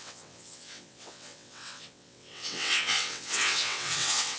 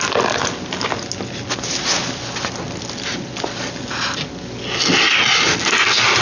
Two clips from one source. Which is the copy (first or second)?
first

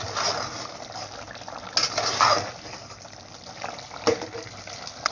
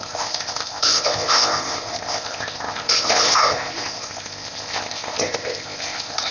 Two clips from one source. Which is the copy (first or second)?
second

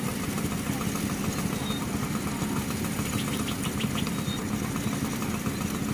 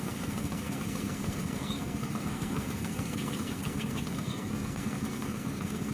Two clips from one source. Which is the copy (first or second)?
second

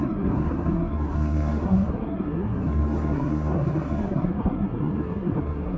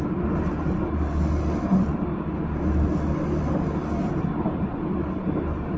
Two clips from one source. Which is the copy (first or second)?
first